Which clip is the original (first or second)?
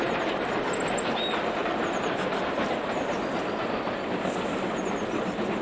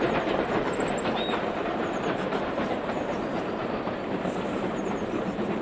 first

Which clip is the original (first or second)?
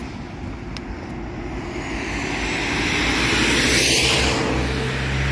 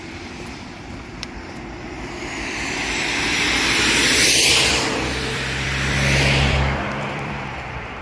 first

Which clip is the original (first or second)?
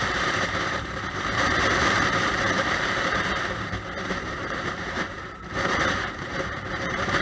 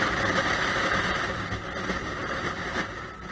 second